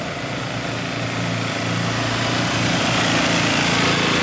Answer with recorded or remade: recorded